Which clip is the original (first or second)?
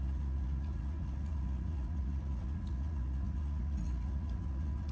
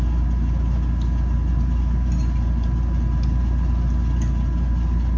second